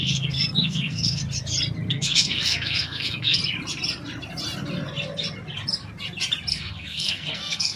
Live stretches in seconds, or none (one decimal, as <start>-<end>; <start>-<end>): 1.2-1.9; 3.4-6.5